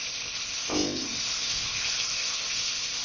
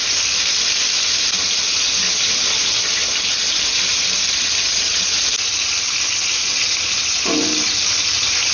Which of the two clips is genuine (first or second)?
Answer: second